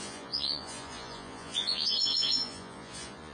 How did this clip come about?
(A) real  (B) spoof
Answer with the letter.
B